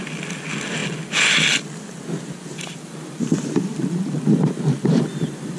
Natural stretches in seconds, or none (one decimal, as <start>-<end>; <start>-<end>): 0.0-5.6